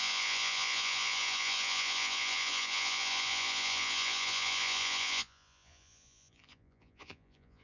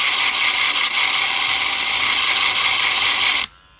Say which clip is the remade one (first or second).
first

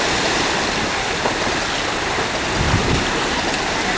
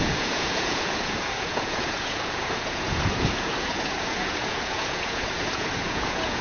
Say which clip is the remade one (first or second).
second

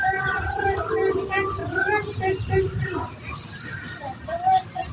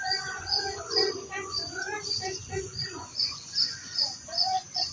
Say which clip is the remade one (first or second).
second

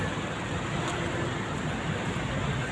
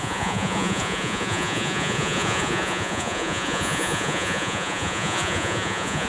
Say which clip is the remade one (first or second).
second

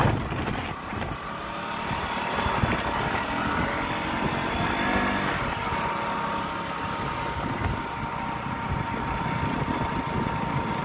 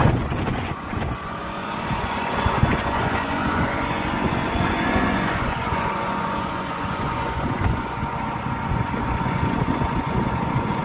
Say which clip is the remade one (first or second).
second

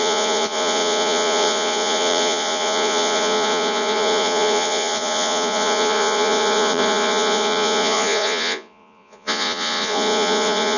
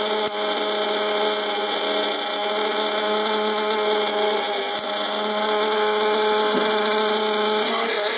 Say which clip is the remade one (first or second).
first